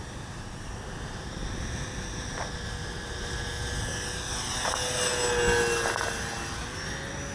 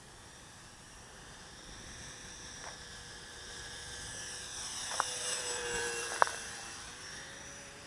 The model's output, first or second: second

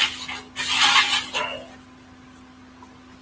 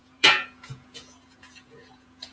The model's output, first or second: second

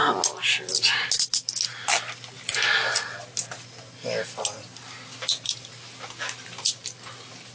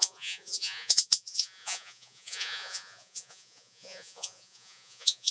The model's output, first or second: second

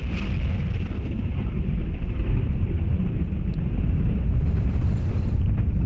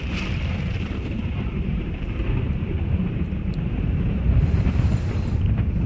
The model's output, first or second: second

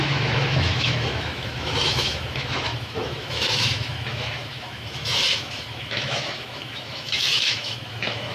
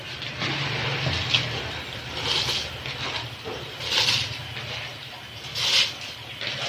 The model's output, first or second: first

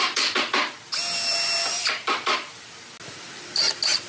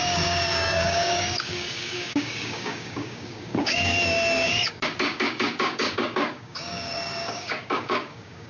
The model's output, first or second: second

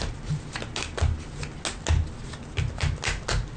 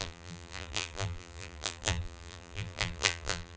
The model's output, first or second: second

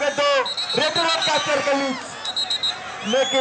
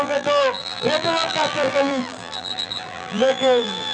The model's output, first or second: second